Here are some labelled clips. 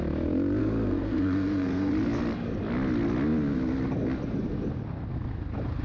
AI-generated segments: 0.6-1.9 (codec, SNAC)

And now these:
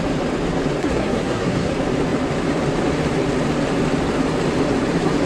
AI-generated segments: 0.8-1.7 (codec, SNAC)

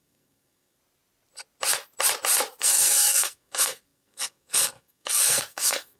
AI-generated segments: 0.0-0.8 (codec, SNAC); 2.6-6.0

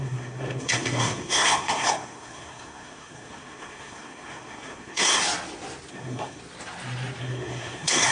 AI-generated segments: 0.0-5.2 (codec, SNAC); 5.9-6.4; 7.2-8.1

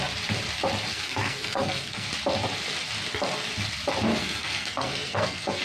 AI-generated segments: 0.9-2.1 (codec, SNAC); 4.2-5.6

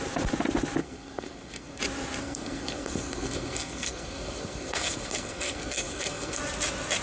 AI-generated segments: 0.8-1.8 (codec, SNAC); 2.2-6.4